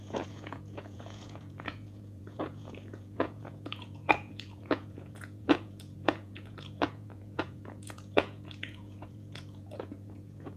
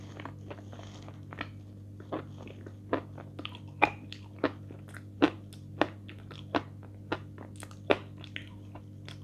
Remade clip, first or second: first